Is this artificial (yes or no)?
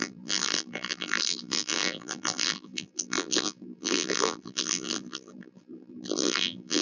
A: yes